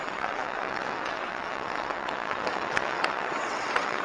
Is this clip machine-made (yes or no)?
yes